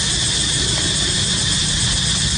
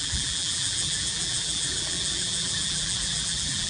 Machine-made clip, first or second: second